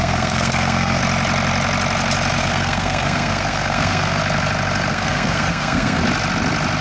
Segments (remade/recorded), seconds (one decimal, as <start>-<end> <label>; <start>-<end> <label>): 0.0-1.0 remade; 1.0-2.4 recorded; 2.4-4.2 remade; 4.2-4.9 recorded; 4.9-6.0 remade; 6.0-6.8 recorded